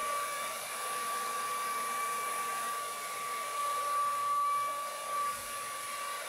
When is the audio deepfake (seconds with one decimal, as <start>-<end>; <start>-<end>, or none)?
0.0-3.8; 4.2-5.8